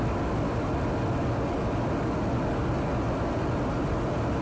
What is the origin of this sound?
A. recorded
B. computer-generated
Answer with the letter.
A